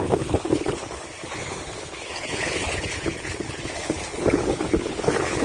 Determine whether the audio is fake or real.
fake